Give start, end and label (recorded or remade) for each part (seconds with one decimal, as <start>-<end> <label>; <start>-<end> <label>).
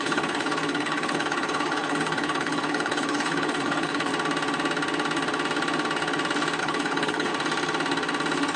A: 0.0-4.1 remade; 4.1-6.6 recorded; 6.6-7.3 remade; 7.3-8.6 recorded